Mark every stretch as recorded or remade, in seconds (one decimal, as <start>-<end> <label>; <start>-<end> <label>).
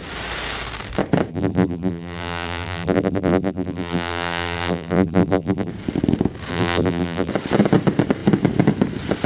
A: 0.0-1.3 recorded; 1.3-5.7 remade; 5.7-6.5 recorded; 6.5-7.3 remade; 7.3-9.3 recorded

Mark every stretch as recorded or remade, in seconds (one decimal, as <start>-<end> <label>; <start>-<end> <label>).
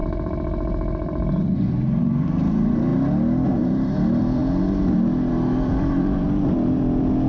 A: 0.0-2.9 remade; 2.9-3.6 recorded; 3.6-4.4 remade; 4.4-5.3 recorded; 5.3-7.3 remade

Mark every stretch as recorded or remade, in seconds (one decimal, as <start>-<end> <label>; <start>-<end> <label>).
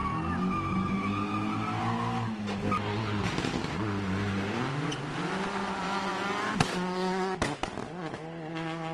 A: 0.0-8.9 recorded